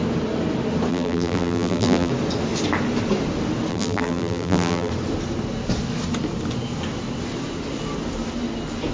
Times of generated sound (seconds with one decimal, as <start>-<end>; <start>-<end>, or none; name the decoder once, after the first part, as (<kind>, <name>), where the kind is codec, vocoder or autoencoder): 0.9-2.1 (vocoder, BigVGAN v2); 3.7-4.9